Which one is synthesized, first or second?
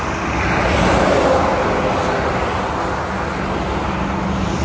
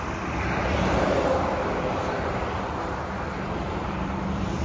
second